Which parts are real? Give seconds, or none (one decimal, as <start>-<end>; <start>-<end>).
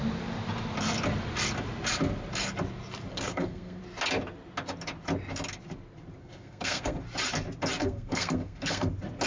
0.0-3.1; 3.8-6.2; 7.0-7.8; 8.9-9.3